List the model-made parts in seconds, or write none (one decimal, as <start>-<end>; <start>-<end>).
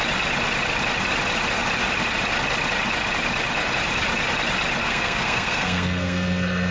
4.8-6.7